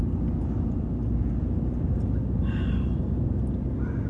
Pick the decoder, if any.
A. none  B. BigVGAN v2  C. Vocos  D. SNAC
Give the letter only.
A